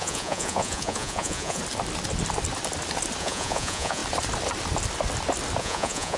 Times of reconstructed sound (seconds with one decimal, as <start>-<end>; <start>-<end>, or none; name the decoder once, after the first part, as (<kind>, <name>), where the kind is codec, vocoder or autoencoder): 0.0-1.6 (vocoder, Vocos); 3.2-4.0; 5.6-6.2